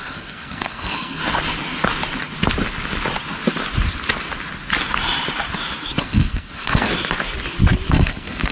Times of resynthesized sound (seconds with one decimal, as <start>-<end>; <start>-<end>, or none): 0.0-1.2; 6.0-6.9; 7.9-8.5